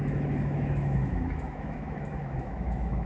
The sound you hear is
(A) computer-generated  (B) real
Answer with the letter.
A